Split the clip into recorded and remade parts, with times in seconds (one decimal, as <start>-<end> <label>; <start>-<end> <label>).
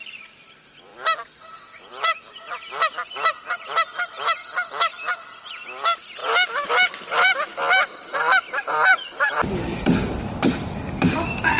0.0-0.9 remade; 0.9-1.5 recorded; 1.5-6.2 remade; 6.2-6.7 recorded; 6.7-7.5 remade; 7.5-8.6 recorded; 8.6-11.6 remade